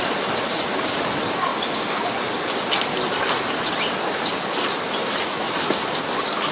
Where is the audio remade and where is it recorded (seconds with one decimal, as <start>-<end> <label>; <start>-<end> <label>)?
0.0-6.5 recorded